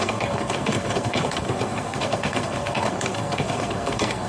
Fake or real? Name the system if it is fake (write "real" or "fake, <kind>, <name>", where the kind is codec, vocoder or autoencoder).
fake, codec, SNAC